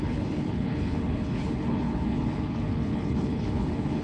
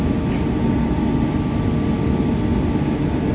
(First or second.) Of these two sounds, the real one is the second